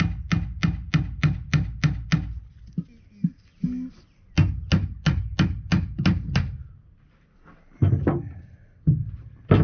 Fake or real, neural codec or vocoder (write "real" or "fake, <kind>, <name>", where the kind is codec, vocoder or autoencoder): real